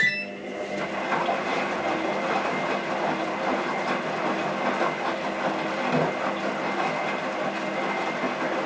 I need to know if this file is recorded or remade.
recorded